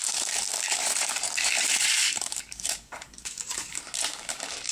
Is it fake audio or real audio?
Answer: fake